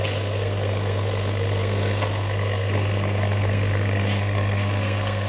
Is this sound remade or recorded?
remade